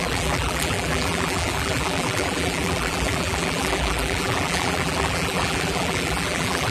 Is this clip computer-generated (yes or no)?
yes